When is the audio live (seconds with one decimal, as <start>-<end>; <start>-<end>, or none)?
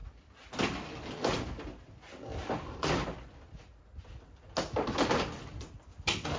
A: 0.0-6.4